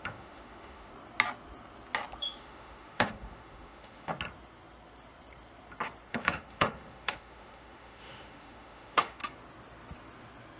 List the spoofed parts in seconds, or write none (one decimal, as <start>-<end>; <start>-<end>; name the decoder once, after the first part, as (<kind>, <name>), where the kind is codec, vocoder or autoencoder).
0.0-0.9 (autoencoder, DAC-VAE); 2.2-4.1; 6.1-9.2